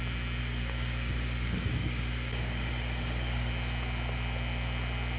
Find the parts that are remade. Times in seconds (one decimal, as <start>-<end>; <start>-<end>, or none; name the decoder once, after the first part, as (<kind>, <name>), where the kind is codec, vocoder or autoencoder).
0.4-3.5 (codec, DAC)